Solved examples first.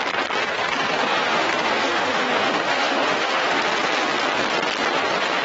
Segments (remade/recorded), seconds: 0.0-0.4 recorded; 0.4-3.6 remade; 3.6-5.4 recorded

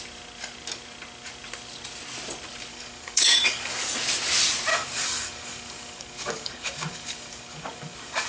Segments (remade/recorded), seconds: 0.0-2.7 recorded; 2.7-3.8 remade; 3.8-4.7 recorded; 4.7-8.3 remade

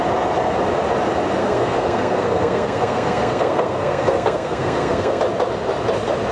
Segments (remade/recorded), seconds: 0.0-1.4 recorded; 1.4-5.2 remade; 5.2-6.3 recorded

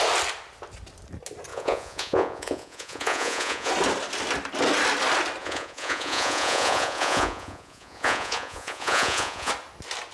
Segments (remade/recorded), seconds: 0.0-1.5 recorded; 1.5-3.7 remade; 3.7-5.4 recorded; 5.4-9.5 remade; 9.5-10.1 recorded

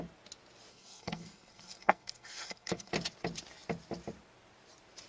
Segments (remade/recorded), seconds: 0.0-0.7 recorded; 0.7-2.9 remade; 2.9-5.1 recorded

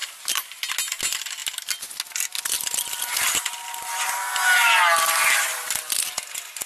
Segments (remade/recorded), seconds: 0.0-0.8 recorded; 0.8-1.4 remade; 1.4-5.4 recorded; 5.4-6.7 remade

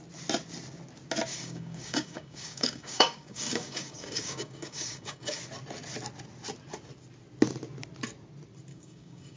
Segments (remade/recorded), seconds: 0.0-1.3 recorded; 1.3-5.4 remade; 5.4-8.7 recorded; 8.7-9.4 remade